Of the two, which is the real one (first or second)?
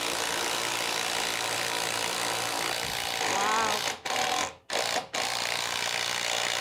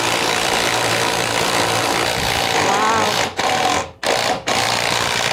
first